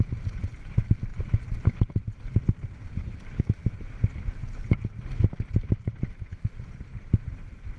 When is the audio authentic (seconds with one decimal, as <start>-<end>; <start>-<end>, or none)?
0.0-1.1; 3.4-4.4; 5.0-7.8